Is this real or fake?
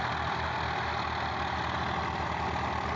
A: real